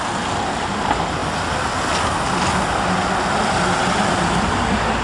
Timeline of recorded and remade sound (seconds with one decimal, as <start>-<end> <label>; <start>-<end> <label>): 0.0-5.0 recorded

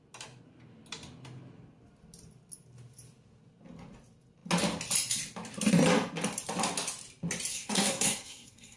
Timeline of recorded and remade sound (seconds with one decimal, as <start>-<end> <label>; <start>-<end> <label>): 0.0-7.5 recorded; 7.5-8.8 remade